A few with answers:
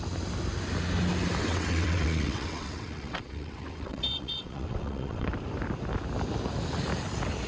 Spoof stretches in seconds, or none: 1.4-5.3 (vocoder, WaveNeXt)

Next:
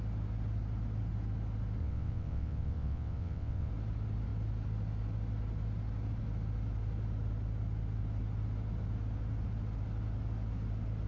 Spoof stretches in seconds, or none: 1.8-3.7 (vocoder, WaveNeXt)

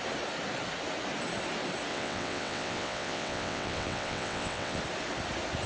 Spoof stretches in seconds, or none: 1.9-4.8 (vocoder, WaveNeXt)

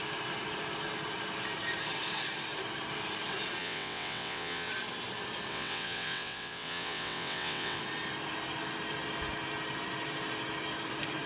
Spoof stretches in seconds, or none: 3.6-4.7 (vocoder, WaveNeXt); 5.5-7.8

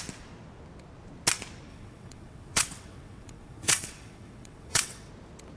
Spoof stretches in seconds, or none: 1.7-5.1 (vocoder, WaveNeXt)

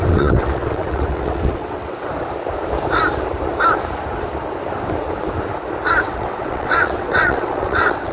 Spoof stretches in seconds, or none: 0.0-2.1 (vocoder, WaveNeXt); 6.0-8.1

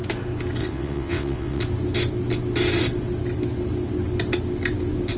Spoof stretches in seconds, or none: 0.6-1.6 (vocoder, WaveNeXt)